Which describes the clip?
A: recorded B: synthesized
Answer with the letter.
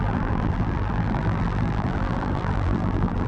B